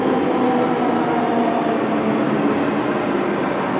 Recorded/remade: recorded